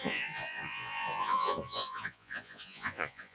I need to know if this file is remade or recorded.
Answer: remade